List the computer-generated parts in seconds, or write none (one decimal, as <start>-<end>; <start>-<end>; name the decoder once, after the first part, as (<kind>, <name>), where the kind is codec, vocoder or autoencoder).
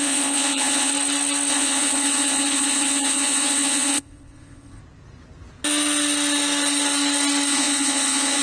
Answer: 0.0-0.9 (vocoder, Vocos); 1.5-4.8; 7.5-8.4